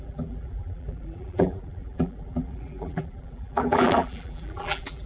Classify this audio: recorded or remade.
remade